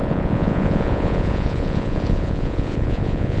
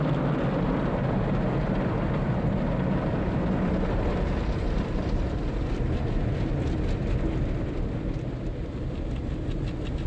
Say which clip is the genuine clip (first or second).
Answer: second